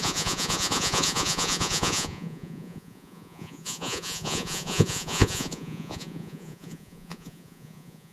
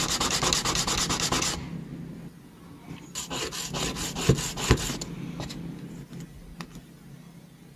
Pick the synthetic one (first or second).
first